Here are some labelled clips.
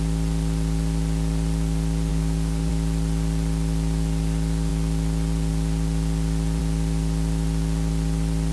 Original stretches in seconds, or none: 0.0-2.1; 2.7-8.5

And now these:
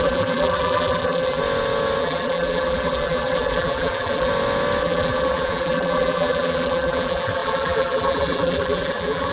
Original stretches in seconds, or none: 1.4-2.0; 4.3-4.8

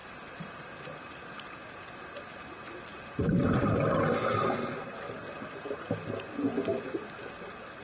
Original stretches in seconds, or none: 0.6-7.8

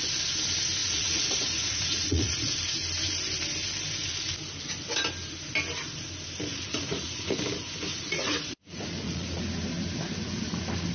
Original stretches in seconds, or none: 0.0-0.8; 2.5-6.5; 7.4-7.9; 9.4-10.9

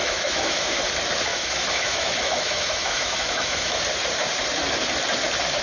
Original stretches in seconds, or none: 0.9-1.3; 3.8-5.6